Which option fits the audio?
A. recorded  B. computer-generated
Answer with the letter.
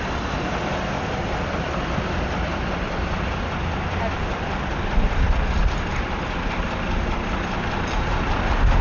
A